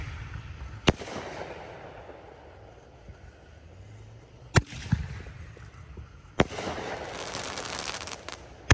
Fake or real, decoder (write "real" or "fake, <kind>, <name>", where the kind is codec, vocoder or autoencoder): real